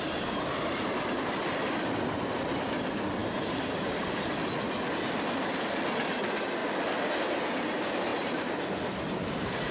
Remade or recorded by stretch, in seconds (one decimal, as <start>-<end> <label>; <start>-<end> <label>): 0.0-3.2 recorded; 3.2-4.3 remade; 4.3-8.1 recorded; 8.1-8.6 remade; 8.6-9.7 recorded

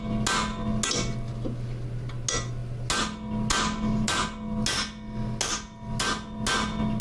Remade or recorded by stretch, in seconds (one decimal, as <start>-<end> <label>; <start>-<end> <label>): 0.0-7.0 recorded

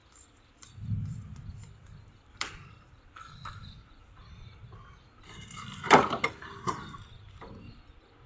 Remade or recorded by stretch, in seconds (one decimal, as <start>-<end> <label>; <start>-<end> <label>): 0.0-2.4 recorded; 2.4-8.3 remade